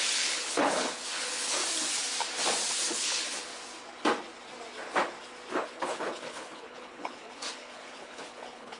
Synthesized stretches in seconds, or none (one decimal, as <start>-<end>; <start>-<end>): 0.0-1.6; 2.9-3.5; 5.5-8.8